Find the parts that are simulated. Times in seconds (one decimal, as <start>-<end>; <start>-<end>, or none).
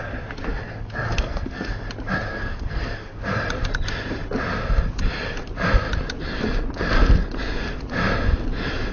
1.1-1.7; 2.3-3.2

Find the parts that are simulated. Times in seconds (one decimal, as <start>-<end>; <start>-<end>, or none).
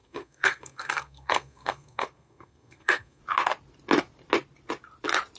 0.0-3.2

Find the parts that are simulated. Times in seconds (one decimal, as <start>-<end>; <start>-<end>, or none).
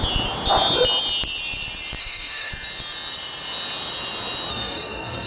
2.0-2.5; 4.5-5.3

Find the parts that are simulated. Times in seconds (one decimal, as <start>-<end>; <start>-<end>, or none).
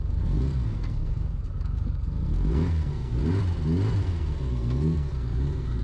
0.0-3.2; 4.0-5.8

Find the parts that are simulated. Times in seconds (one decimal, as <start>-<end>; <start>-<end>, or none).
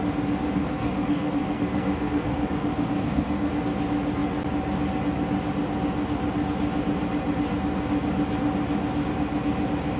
0.6-3.5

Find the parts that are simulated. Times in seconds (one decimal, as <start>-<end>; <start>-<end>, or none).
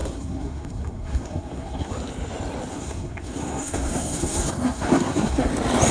0.0-1.9; 2.7-5.5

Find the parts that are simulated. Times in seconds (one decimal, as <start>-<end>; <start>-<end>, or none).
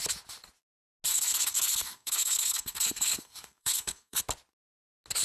1.1-4.2